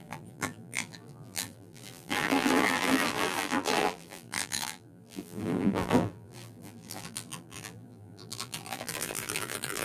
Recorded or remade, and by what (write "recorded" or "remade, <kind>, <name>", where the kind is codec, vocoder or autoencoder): remade, vocoder, BigVGAN v2